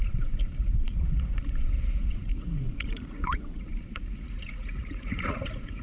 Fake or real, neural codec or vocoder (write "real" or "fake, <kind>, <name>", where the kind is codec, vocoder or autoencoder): fake, vocoder, Vocos